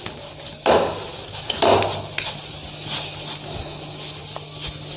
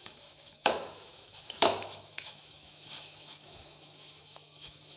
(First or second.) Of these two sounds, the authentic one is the first